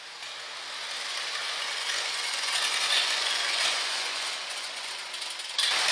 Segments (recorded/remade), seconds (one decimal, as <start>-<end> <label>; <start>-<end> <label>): 0.0-1.4 recorded; 1.4-4.9 remade; 4.9-5.9 recorded